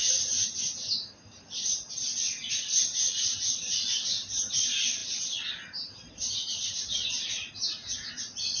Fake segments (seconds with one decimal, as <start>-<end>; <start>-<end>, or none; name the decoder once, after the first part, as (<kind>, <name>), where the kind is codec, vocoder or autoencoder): none